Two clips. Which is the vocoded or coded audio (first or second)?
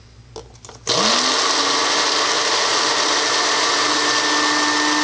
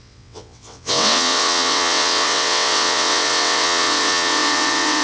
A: second